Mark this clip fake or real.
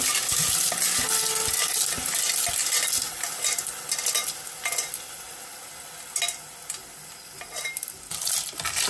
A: real